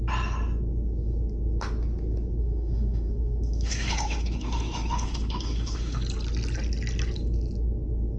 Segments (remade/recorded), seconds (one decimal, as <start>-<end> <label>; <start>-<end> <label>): 0.0-2.4 recorded; 2.4-6.0 remade; 6.0-8.2 recorded